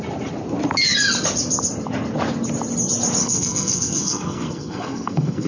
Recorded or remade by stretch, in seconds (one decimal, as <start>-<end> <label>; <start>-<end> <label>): 0.0-3.2 recorded; 3.2-5.5 remade